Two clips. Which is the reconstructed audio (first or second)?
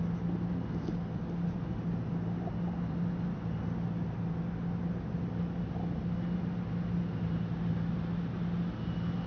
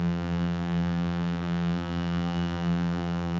second